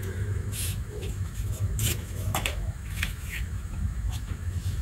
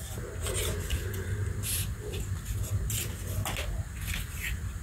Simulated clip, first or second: first